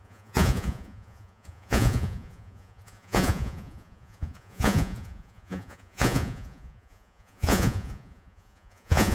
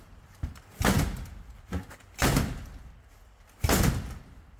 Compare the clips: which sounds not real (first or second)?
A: first